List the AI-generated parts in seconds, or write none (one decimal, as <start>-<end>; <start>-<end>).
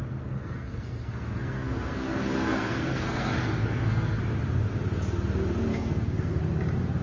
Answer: 0.0-4.2; 5.7-6.4